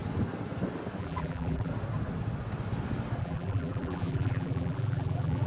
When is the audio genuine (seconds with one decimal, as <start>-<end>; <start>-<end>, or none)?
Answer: 0.0-1.0; 1.7-3.2